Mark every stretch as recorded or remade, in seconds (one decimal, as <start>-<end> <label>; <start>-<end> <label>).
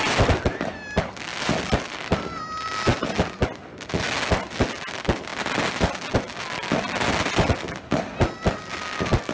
0.0-9.3 recorded